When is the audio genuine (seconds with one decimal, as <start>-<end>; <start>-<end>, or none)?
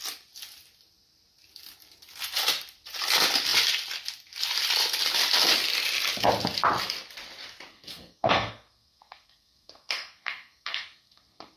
0.0-7.7